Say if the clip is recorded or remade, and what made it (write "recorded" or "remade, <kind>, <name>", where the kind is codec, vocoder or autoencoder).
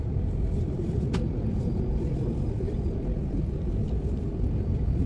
remade, vocoder, BigVGAN v2